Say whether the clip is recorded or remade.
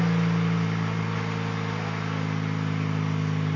recorded